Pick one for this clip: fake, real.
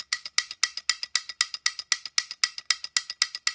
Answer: real